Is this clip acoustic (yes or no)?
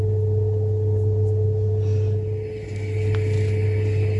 yes